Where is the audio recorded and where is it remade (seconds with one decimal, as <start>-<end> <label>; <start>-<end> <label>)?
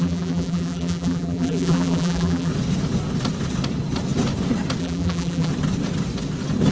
0.0-2.5 remade; 2.5-4.8 recorded; 4.8-5.5 remade; 5.5-6.7 recorded